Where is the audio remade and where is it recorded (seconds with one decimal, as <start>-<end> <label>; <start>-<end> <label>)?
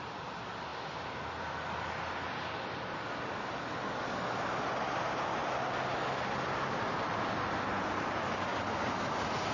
0.0-9.5 recorded